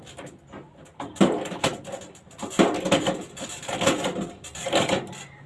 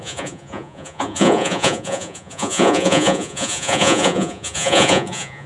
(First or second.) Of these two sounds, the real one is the first